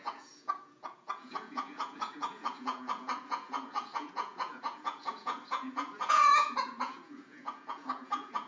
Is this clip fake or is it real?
fake